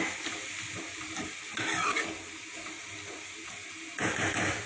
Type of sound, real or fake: real